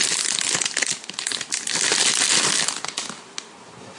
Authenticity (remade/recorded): recorded